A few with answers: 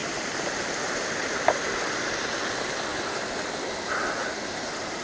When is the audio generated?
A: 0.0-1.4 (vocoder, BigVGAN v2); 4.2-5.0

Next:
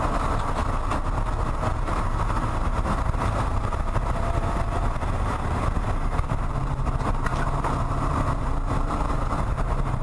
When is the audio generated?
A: 0.0-0.6 (vocoder, BigVGAN v2); 1.8-10.0

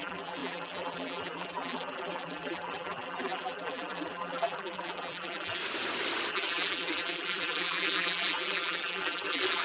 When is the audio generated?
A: 0.0-5.6 (vocoder, BigVGAN v2); 6.3-9.6

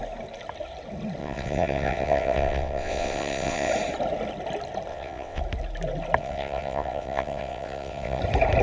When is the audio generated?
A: 1.2-3.7 (vocoder, WaveNeXt); 4.9-5.4; 6.2-8.2